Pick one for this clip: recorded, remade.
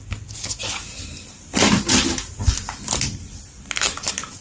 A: recorded